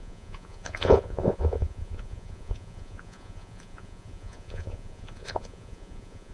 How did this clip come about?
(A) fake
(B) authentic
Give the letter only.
A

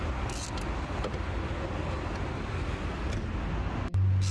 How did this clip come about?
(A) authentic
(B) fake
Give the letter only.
A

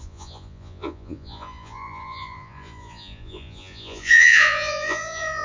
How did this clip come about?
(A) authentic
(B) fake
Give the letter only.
B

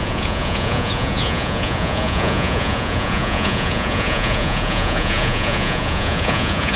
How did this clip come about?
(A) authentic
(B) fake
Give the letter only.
B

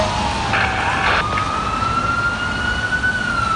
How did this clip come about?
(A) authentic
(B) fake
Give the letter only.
A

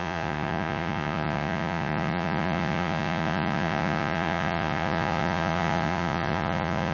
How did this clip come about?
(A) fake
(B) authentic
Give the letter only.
A